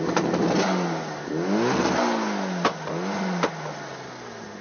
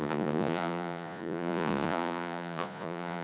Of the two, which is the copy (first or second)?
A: second